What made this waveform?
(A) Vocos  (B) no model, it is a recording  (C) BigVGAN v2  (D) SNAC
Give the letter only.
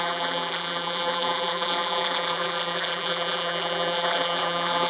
C